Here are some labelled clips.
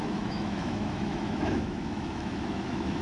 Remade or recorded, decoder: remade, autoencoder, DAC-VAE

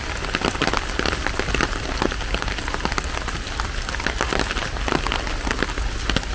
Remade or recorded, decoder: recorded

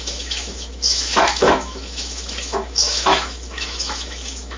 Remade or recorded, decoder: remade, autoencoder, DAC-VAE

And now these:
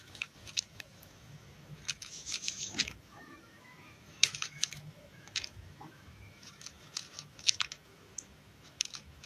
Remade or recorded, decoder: remade, autoencoder, DAC-VAE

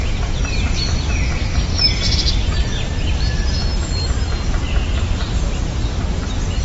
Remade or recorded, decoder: recorded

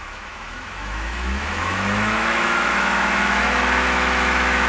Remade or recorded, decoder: remade, autoencoder, DAC-VAE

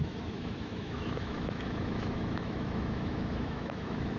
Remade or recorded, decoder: remade, autoencoder, DAC-VAE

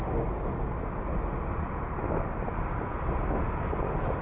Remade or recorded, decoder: recorded